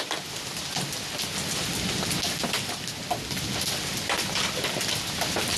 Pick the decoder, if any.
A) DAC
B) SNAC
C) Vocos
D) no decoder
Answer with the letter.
D